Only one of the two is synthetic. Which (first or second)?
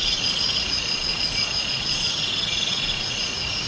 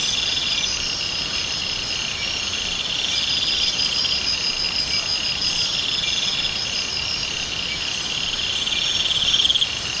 first